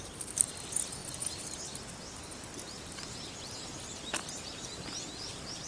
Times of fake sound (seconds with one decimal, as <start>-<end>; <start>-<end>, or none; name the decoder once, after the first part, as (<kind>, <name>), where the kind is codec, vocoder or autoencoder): none